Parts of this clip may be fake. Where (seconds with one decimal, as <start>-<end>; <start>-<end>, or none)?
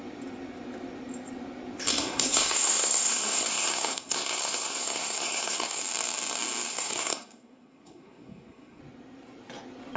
1.9-5.8; 6.7-8.8